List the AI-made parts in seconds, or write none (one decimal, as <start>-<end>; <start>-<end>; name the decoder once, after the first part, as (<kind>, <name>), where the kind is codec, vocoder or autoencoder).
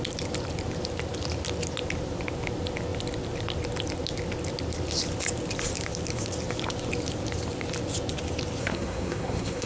8.6-9.7 (codec, SNAC)